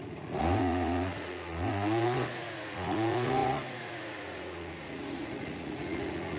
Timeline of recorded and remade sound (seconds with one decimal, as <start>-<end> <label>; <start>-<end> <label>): 0.0-6.4 remade